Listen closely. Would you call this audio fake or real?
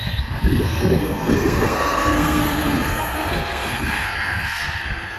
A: fake